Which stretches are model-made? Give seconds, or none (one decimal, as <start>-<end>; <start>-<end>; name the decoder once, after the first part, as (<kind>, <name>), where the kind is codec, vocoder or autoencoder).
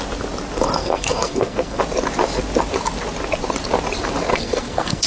0.8-1.8 (codec, SNAC); 4.3-5.1